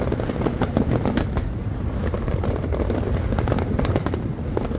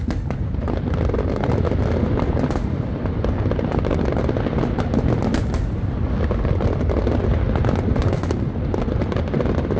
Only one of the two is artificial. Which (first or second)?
first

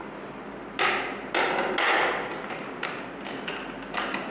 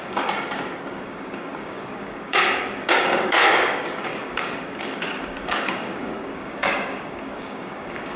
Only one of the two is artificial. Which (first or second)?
second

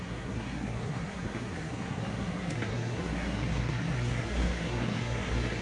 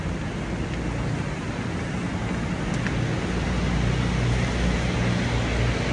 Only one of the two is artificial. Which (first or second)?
first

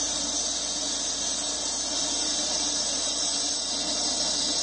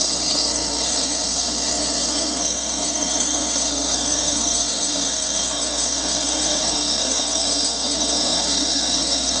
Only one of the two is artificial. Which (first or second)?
second